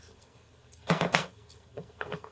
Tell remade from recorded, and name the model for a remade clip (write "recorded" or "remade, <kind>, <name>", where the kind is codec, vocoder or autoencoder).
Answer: remade, codec, SNAC